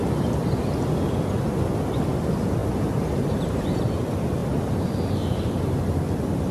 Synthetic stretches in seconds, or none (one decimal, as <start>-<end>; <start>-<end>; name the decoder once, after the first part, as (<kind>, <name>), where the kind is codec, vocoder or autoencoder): none